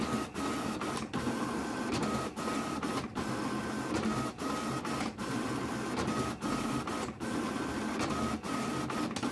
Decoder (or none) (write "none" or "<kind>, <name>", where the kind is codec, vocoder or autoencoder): none